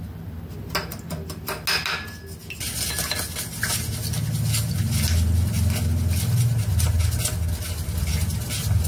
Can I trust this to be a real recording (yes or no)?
yes